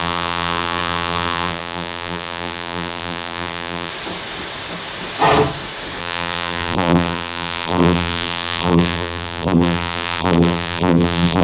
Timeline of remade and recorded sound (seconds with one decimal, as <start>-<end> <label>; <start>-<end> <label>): 0.0-3.9 remade; 3.9-6.0 recorded; 6.0-11.4 remade